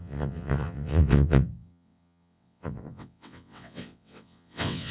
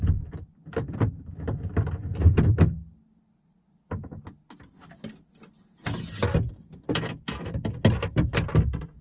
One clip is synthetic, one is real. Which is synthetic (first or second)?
first